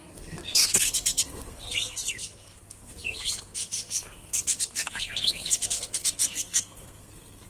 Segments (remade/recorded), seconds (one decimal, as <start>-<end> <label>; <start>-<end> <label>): 0.0-7.5 remade